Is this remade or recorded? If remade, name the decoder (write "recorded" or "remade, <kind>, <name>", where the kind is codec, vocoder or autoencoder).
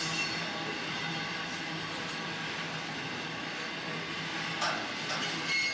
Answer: recorded